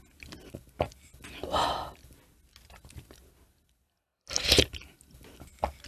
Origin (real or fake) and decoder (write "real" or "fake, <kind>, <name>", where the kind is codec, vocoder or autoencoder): real